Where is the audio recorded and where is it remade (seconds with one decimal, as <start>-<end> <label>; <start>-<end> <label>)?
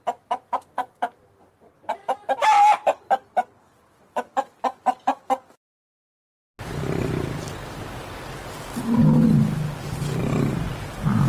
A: 0.0-6.8 recorded; 6.8-7.7 remade; 7.7-10.2 recorded; 10.2-10.7 remade; 10.7-11.3 recorded